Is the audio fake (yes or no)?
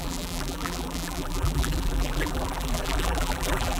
yes